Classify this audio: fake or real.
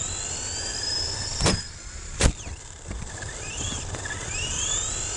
real